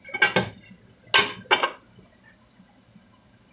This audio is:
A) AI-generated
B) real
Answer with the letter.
B